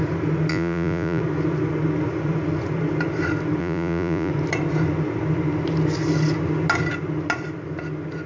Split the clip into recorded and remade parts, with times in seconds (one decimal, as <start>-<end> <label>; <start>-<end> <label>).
0.0-0.5 recorded; 0.5-1.2 remade; 1.2-3.6 recorded; 3.6-4.3 remade; 4.3-8.3 recorded